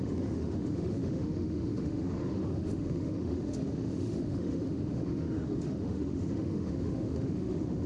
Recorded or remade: remade